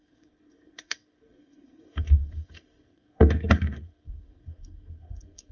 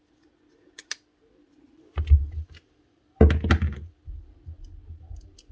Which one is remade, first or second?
first